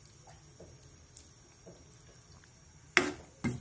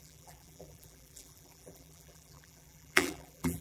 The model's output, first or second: second